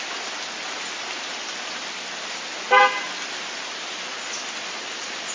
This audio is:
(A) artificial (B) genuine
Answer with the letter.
B